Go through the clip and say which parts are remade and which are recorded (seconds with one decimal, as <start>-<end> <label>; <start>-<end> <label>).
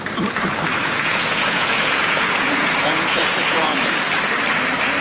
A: 0.0-0.8 recorded; 0.8-3.8 remade; 3.8-5.0 recorded